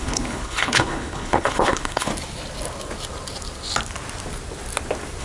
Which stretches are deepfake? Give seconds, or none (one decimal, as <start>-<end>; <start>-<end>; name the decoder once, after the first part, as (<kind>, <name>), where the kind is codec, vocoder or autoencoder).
0.0-2.1 (codec, HILCodec)